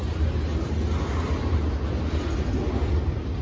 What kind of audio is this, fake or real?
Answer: real